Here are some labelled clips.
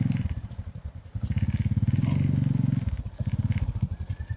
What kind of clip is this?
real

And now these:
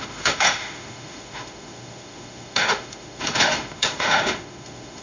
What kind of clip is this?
fake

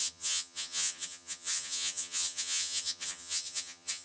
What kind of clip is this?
fake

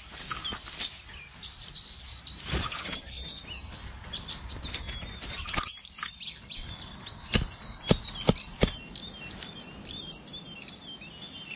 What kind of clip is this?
real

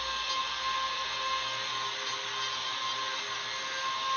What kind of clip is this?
real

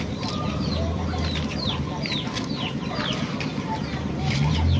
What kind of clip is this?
real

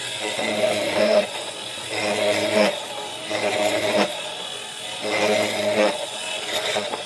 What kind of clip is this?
fake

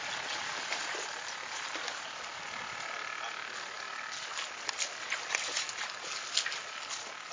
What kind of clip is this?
real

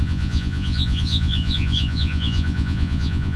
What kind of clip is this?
fake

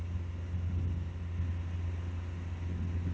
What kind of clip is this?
real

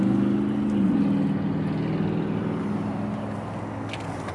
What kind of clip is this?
real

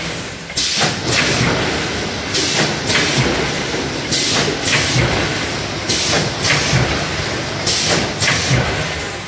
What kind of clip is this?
real